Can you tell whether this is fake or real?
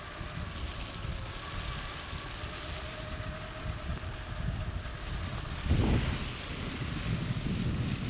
real